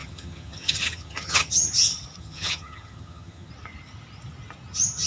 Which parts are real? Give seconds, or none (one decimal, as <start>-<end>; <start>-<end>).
1.7-2.2; 3.5-5.1